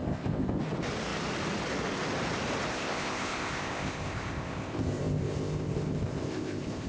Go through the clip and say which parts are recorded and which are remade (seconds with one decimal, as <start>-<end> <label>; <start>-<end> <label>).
0.0-0.6 remade; 0.6-2.7 recorded; 2.7-6.9 remade